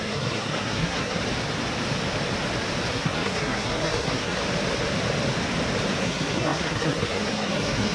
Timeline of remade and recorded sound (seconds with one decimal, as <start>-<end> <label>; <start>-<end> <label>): 0.0-1.2 remade; 1.2-2.9 recorded; 2.9-4.4 remade; 4.4-6.0 recorded; 6.0-7.9 remade